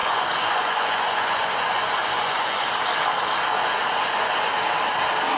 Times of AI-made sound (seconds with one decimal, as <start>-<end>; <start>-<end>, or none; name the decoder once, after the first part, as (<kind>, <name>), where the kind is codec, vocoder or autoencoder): 0.0-2.7 (vocoder, Vocos); 3.6-4.5